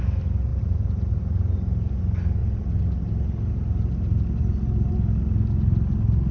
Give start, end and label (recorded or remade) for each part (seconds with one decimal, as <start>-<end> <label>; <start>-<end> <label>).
0.0-0.5 recorded; 0.5-1.2 remade; 1.2-6.3 recorded